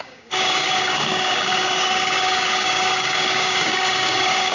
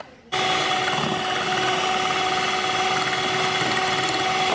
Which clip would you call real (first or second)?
second